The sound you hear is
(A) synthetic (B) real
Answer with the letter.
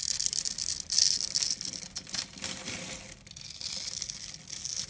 B